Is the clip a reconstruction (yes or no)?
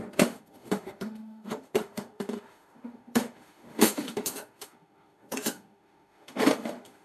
yes